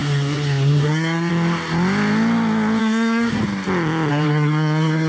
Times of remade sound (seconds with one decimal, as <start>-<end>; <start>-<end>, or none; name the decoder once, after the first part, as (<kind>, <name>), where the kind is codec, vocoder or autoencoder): 0.0-1.3 (codec, SNAC); 2.8-3.4; 4.1-5.1